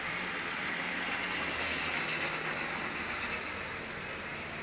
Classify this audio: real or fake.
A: real